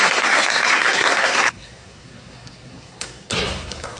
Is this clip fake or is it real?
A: fake